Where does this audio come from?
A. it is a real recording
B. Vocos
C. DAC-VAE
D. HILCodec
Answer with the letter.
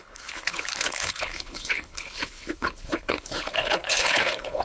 D